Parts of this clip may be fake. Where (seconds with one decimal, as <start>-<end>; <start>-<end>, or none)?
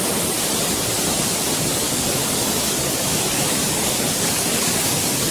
1.7-5.3